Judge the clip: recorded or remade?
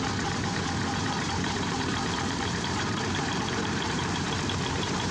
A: remade